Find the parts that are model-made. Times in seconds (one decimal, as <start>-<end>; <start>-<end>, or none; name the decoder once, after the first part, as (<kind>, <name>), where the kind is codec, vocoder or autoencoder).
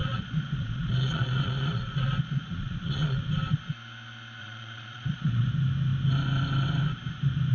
0.0-3.2 (vocoder, Vocos); 4.4-5.5